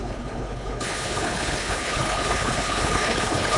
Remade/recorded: remade